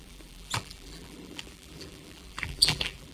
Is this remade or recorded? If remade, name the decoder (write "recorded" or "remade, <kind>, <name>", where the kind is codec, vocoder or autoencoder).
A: remade, vocoder, BigVGAN v2